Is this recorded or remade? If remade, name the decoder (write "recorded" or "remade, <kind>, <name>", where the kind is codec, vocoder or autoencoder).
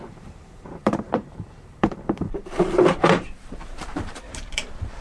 remade, vocoder, BigVGAN v2